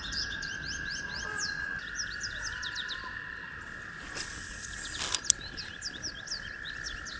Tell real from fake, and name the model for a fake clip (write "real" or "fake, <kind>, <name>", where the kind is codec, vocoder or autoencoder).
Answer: real